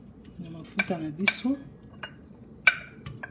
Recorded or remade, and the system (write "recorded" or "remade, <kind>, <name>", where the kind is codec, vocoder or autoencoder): recorded